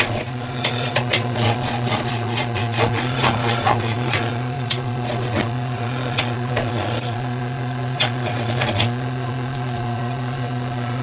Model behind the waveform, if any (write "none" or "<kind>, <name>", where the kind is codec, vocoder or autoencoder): vocoder, Vocos